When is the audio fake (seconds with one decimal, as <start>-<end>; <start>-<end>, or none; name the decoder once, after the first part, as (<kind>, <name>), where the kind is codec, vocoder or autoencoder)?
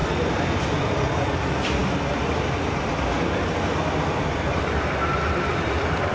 none